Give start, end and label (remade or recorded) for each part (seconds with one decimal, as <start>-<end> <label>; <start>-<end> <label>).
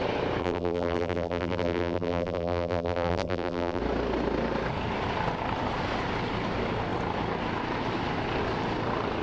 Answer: 0.0-0.4 recorded; 0.4-3.8 remade; 3.8-9.2 recorded